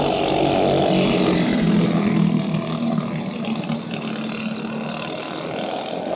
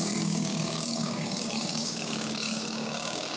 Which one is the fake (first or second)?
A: second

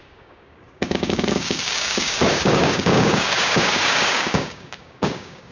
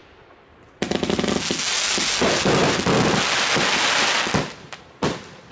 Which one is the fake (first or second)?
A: first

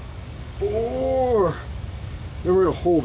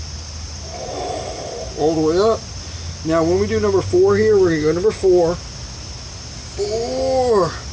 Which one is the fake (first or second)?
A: first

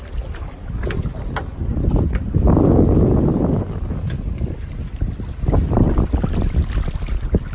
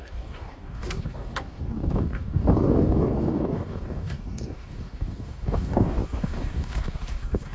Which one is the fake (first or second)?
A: second